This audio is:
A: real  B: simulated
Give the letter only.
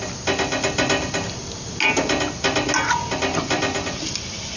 A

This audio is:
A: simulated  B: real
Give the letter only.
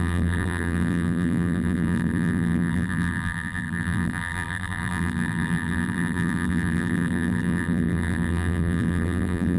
A